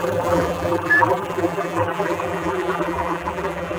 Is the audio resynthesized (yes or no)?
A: yes